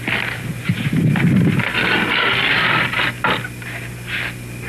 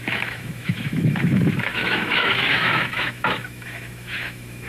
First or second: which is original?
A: first